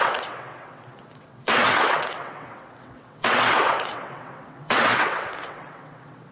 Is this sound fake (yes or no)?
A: yes